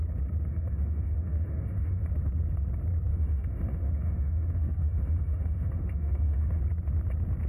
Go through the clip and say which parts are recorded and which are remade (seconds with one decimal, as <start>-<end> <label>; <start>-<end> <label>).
0.0-0.5 recorded; 0.5-2.0 remade; 2.0-3.1 recorded; 3.1-6.6 remade; 6.6-7.5 recorded